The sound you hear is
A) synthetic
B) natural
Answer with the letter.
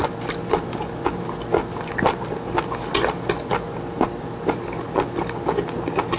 B